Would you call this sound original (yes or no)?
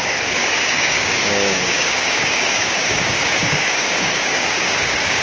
no